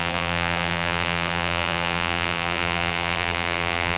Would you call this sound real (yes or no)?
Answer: no